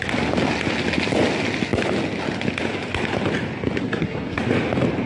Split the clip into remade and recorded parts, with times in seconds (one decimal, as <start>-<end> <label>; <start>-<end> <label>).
0.0-3.8 recorded; 3.8-4.4 remade; 4.4-5.1 recorded